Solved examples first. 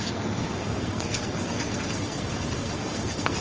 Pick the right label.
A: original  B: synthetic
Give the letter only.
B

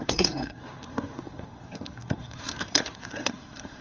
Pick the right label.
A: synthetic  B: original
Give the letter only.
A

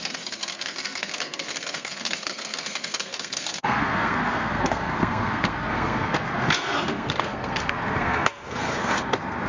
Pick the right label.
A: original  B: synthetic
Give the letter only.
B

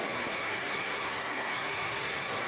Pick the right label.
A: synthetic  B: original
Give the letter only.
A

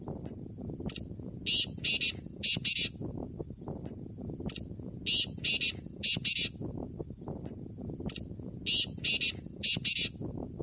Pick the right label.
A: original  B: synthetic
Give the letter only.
A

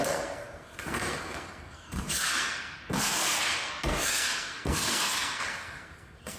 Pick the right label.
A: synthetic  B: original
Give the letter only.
A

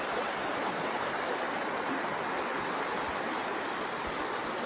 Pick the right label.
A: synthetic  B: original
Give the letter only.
B